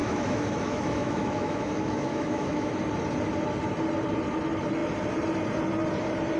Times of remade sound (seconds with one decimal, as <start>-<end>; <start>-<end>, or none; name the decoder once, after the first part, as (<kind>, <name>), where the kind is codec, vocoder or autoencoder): 0.0-2.7 (autoencoder, DAC-VAE)

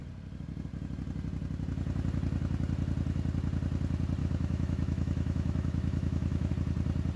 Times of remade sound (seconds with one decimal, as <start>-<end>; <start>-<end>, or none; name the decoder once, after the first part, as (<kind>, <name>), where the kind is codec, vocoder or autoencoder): 4.2-6.5 (autoencoder, DAC-VAE)

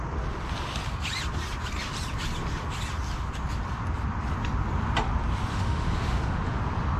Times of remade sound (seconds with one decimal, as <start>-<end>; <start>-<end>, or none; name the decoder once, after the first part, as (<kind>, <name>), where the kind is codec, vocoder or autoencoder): 5.5-6.6 (autoencoder, DAC-VAE)

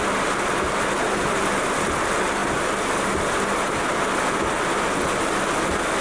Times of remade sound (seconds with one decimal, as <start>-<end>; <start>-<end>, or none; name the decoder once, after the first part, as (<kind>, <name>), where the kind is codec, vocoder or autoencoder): none

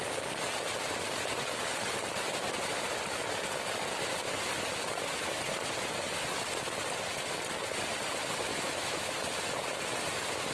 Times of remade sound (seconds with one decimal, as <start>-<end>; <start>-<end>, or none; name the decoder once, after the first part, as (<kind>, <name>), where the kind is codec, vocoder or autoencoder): 8.5-9.1 (autoencoder, DAC-VAE)

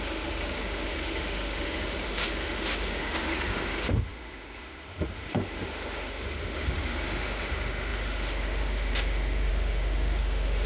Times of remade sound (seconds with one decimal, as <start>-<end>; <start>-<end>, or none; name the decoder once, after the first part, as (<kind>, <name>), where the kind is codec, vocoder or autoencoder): 0.0-10.7 (autoencoder, DAC-VAE)